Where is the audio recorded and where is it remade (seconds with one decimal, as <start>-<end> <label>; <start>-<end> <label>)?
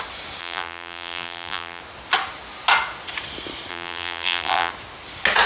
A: 0.0-0.4 recorded; 0.4-1.8 remade; 1.8-3.7 recorded; 3.7-4.7 remade; 4.7-5.5 recorded